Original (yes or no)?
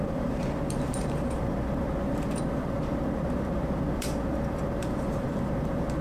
no